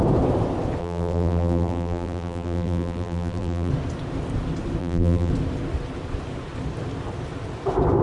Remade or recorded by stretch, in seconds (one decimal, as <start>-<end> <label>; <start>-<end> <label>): 0.0-0.8 recorded; 0.8-3.7 remade; 3.7-4.8 recorded; 4.8-5.3 remade; 5.3-8.0 recorded